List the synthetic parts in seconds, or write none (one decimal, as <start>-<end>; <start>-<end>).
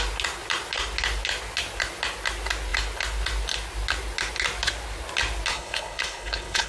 5.5-6.7